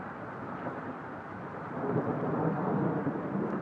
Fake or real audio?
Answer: real